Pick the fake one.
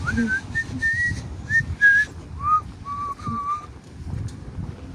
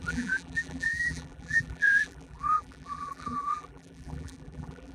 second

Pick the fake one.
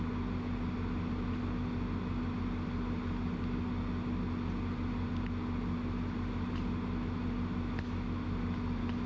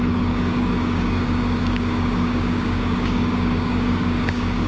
second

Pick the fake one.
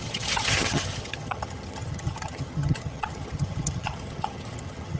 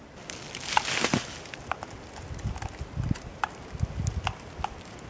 first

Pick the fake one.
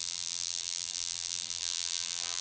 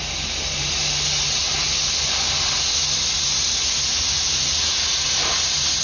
first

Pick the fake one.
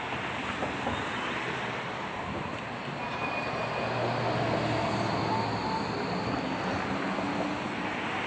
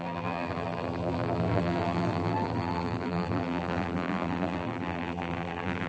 second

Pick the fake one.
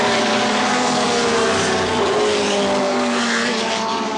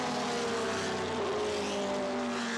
first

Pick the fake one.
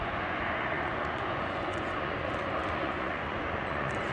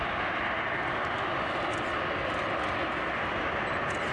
first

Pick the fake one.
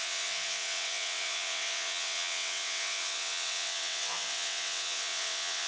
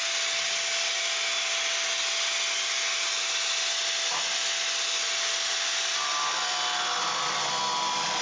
first